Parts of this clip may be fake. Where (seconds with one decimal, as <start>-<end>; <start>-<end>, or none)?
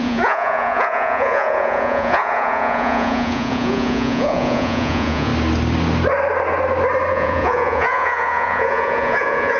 0.0-5.3; 7.1-9.6